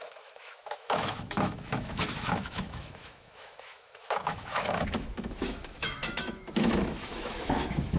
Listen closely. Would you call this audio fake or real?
fake